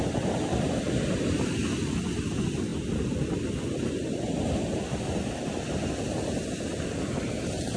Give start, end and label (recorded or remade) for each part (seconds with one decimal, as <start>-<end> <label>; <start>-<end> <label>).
0.0-7.8 recorded

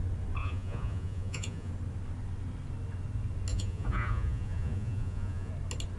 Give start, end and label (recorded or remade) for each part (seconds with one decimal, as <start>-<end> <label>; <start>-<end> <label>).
0.0-0.4 recorded; 0.4-1.7 remade; 1.7-3.5 recorded; 3.5-5.5 remade; 5.5-6.0 recorded

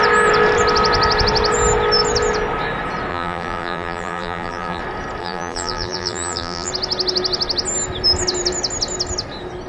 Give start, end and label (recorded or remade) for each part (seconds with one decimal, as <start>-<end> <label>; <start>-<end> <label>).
0.0-3.1 recorded; 3.1-4.8 remade; 4.8-5.2 recorded; 5.2-6.7 remade; 6.7-9.7 recorded

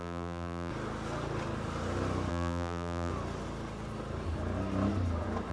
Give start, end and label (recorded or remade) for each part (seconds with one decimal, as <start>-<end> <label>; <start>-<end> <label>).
0.0-0.7 remade; 0.7-2.3 recorded; 2.3-3.1 remade; 3.1-5.5 recorded

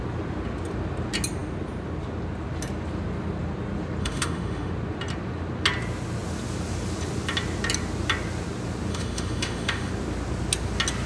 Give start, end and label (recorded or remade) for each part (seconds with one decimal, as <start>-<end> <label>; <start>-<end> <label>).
0.0-4.0 recorded; 4.0-4.7 remade; 4.7-8.9 recorded; 8.9-9.9 remade; 9.9-11.1 recorded

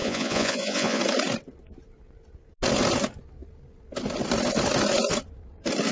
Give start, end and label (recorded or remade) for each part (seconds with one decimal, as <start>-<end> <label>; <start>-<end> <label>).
0.0-1.0 remade; 1.0-5.9 recorded